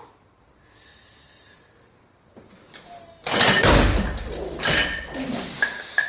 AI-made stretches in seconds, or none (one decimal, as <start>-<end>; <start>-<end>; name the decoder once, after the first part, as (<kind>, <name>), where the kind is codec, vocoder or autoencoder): none